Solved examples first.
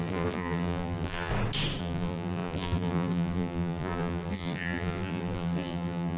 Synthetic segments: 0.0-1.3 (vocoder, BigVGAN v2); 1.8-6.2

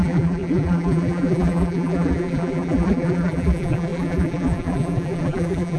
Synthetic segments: 0.0-5.8 (vocoder, BigVGAN v2)

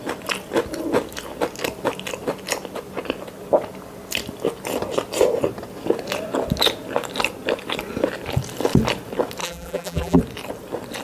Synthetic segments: 9.4-10.2 (vocoder, BigVGAN v2)

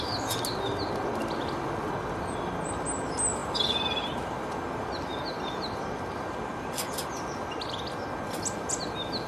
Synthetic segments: none

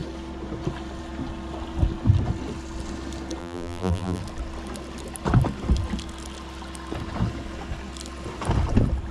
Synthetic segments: 3.4-4.2 (vocoder, BigVGAN v2)

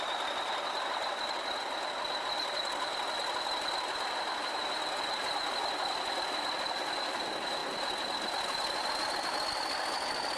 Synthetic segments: none

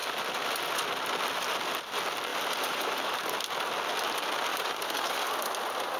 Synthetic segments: 2.3-3.4 (vocoder, BigVGAN v2); 4.5-5.3

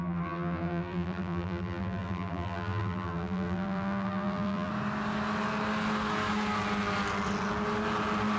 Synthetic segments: 0.0-4.7 (vocoder, BigVGAN v2)